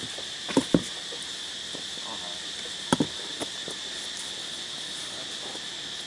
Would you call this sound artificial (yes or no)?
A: no